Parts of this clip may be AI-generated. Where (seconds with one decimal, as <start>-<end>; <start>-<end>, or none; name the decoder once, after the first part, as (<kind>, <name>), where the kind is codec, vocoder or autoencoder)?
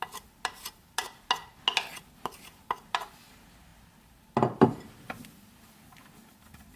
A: none